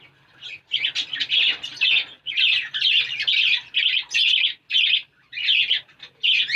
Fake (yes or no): no